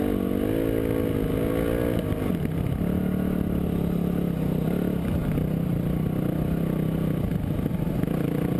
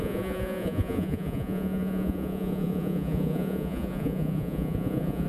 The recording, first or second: first